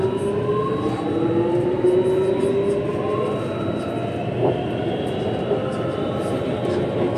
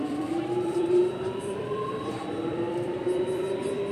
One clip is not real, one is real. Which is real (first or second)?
first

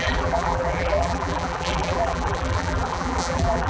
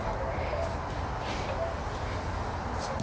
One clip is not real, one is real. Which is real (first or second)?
second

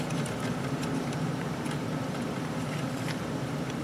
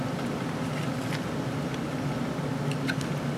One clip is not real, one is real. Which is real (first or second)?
second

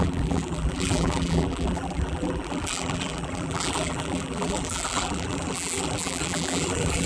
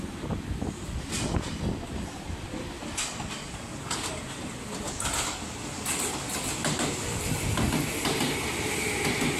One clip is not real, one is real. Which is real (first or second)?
second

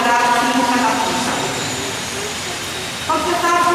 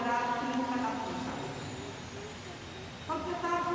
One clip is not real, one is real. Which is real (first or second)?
second